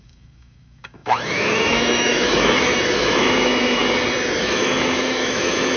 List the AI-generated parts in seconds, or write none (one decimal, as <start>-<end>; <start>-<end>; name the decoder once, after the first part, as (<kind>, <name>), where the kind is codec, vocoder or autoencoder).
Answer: 0.0-3.8 (autoencoder, DAC-VAE); 4.4-5.8